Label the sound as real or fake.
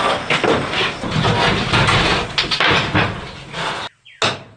real